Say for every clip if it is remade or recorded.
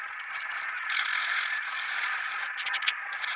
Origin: remade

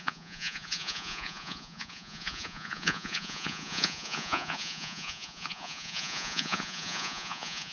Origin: remade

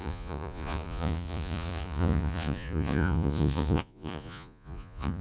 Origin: remade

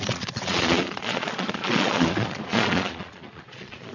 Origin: remade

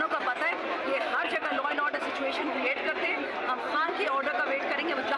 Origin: recorded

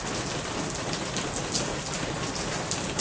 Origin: recorded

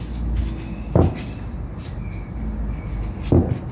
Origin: recorded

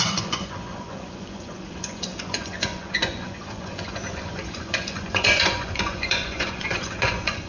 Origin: remade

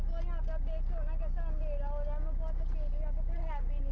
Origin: recorded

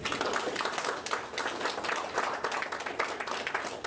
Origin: recorded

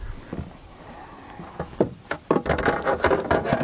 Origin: recorded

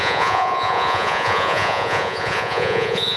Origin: remade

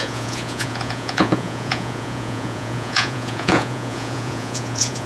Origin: remade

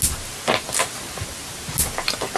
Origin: recorded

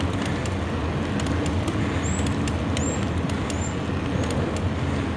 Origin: recorded